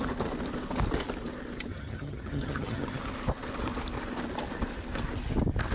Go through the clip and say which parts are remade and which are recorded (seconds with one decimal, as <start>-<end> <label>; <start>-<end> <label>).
0.0-1.7 recorded; 1.7-3.0 remade; 3.0-5.7 recorded